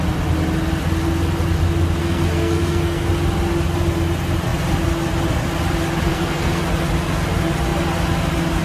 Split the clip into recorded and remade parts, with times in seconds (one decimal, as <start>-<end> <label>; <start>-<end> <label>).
0.0-2.0 recorded; 2.0-3.1 remade; 3.1-6.1 recorded; 6.1-6.6 remade; 6.6-8.6 recorded